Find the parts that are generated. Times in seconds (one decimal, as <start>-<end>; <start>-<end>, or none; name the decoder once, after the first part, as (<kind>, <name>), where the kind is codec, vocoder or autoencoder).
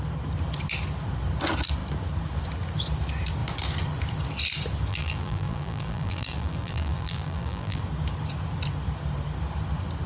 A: 4.9-7.8 (vocoder, BigVGAN v2)